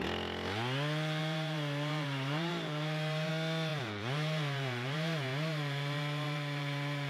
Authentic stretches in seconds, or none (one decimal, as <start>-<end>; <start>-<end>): 0.0-1.2; 3.3-3.7